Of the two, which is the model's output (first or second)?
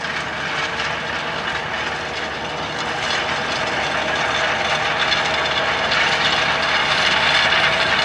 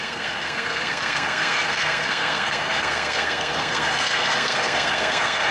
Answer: second